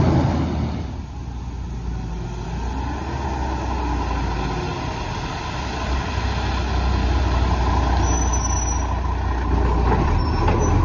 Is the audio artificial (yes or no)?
no